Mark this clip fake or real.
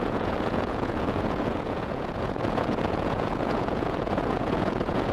fake